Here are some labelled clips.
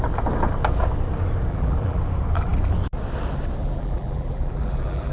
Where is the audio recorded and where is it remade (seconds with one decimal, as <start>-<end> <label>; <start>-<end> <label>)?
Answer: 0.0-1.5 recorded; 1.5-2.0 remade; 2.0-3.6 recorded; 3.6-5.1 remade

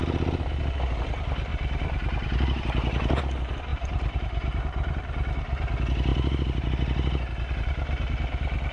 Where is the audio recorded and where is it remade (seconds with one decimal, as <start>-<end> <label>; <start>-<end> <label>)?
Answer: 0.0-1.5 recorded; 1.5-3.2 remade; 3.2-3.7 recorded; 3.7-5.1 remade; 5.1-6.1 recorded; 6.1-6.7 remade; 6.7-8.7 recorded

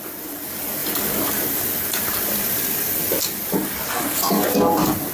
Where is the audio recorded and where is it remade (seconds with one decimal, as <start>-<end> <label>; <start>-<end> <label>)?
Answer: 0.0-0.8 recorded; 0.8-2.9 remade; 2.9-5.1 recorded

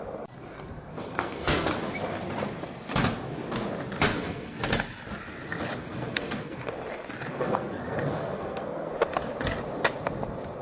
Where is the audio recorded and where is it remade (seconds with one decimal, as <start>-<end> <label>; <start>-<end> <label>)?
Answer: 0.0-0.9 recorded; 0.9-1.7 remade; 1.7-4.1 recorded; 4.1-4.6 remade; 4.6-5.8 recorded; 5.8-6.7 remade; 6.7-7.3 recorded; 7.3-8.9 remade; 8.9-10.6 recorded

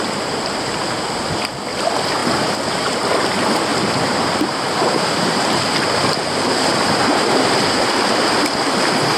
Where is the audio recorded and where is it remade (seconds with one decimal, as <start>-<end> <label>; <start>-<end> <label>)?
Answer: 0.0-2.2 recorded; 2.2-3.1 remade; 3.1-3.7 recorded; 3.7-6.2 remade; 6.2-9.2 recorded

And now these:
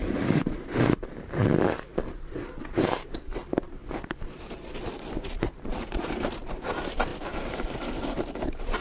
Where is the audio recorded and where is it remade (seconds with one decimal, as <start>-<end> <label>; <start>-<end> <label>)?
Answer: 0.0-1.9 remade; 1.9-2.8 recorded; 2.8-8.8 remade